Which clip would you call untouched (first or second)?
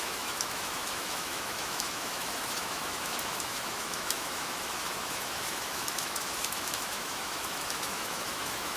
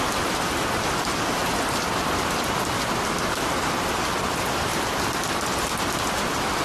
second